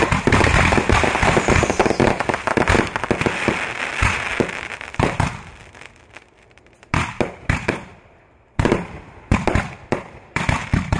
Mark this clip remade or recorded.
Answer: recorded